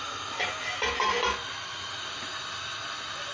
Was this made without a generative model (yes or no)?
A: yes